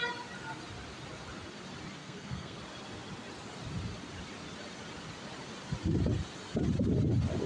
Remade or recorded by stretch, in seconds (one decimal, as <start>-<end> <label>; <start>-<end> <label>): 0.0-2.0 recorded; 2.0-2.6 remade; 2.6-7.5 recorded

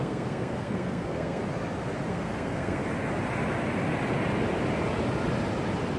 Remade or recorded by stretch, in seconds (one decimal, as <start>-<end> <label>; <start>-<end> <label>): 0.0-1.4 remade; 1.4-2.1 recorded; 2.1-2.8 remade; 2.8-6.0 recorded

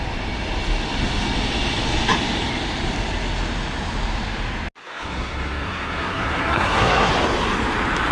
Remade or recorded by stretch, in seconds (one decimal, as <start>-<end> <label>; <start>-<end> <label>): 0.0-4.8 recorded; 4.8-7.1 remade; 7.1-8.1 recorded

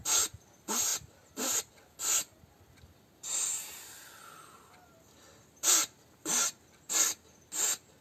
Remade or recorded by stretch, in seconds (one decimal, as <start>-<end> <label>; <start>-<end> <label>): 0.0-8.0 recorded